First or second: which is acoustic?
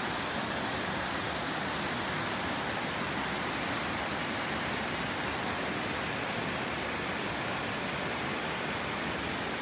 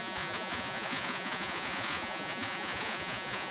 first